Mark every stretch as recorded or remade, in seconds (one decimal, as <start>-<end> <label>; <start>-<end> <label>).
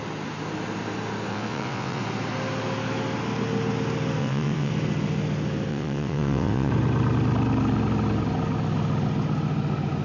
0.0-1.3 recorded; 1.3-2.0 remade; 2.0-4.2 recorded; 4.2-4.7 remade; 4.7-5.7 recorded; 5.7-6.7 remade; 6.7-10.0 recorded